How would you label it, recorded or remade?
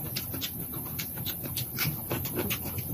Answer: remade